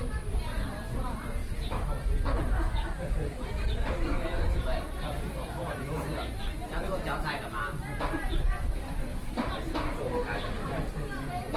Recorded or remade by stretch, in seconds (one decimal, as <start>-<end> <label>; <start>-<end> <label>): 0.0-1.4 remade; 1.4-3.9 recorded; 3.9-6.1 remade; 6.1-8.6 recorded; 8.6-11.6 remade